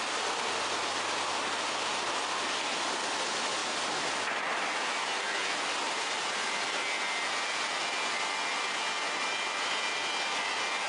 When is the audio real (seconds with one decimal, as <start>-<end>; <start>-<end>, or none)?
0.0-10.9